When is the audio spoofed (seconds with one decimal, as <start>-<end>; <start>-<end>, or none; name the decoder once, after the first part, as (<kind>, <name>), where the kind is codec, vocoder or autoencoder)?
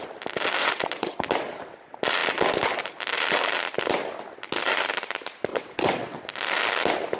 0.6-1.1 (vocoder, WaveNeXt); 5.5-6.2